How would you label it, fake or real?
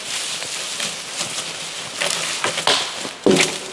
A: real